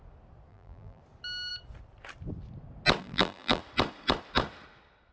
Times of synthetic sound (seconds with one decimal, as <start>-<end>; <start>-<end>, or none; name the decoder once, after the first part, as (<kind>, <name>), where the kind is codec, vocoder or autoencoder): 0.5-1.0 (vocoder, BigVGAN v2); 3.0-3.6